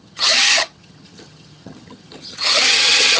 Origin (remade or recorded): remade